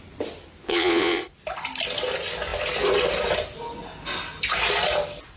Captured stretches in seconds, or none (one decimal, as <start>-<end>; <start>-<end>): 0.0-0.6; 1.2-5.4